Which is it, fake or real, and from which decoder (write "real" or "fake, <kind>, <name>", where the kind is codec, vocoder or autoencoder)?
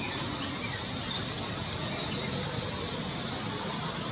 real